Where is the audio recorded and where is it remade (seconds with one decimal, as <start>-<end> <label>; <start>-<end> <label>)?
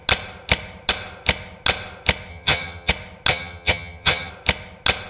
0.0-2.3 recorded; 2.3-2.9 remade; 2.9-3.3 recorded; 3.3-4.3 remade; 4.3-5.1 recorded